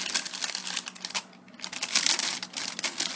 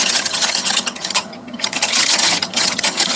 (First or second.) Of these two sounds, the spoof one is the second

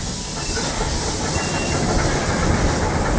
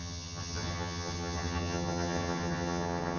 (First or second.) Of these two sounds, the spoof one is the second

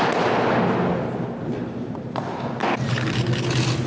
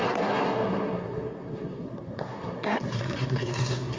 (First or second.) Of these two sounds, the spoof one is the second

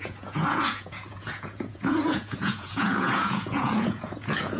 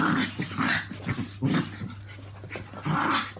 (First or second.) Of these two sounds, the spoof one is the first